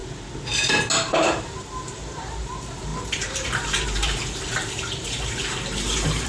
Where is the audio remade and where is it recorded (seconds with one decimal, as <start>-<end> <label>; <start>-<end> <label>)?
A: 0.0-1.1 recorded; 1.1-6.3 remade